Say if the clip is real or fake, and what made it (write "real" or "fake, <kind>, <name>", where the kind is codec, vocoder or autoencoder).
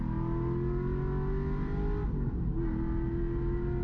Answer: real